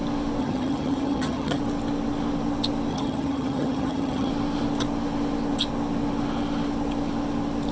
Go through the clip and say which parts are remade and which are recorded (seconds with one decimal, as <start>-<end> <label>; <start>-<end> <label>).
0.0-0.4 recorded; 0.4-1.6 remade; 1.6-2.9 recorded; 2.9-4.3 remade; 4.3-7.7 recorded